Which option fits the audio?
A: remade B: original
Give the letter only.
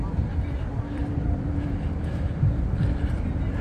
A